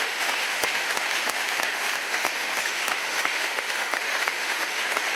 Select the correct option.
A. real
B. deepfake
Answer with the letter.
B